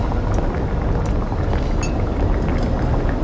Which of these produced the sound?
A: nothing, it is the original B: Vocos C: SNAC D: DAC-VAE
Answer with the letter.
A